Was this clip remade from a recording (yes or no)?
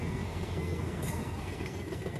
yes